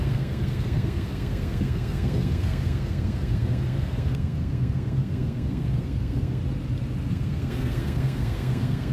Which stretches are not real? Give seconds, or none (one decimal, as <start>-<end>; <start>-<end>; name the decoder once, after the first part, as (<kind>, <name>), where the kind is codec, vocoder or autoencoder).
0.0-6.4 (codec, SNAC); 7.1-8.9